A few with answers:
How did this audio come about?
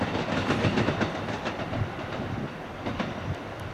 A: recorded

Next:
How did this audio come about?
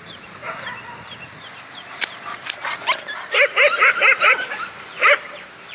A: remade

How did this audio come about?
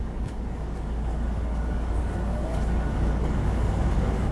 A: remade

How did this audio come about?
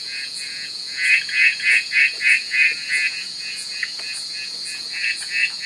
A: remade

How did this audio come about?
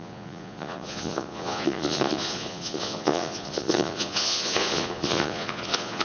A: remade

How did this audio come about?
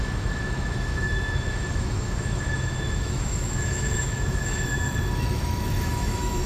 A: remade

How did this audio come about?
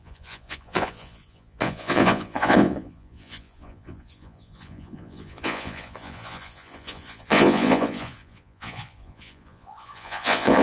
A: remade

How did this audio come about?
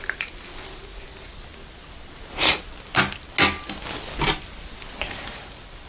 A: recorded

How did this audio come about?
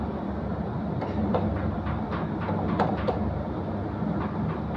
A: remade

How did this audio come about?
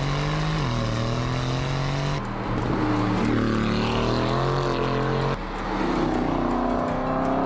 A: recorded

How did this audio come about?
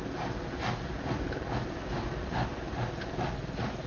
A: recorded